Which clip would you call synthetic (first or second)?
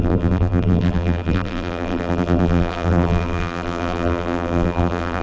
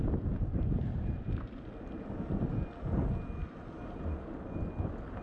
first